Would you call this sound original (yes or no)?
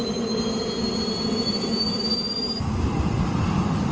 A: yes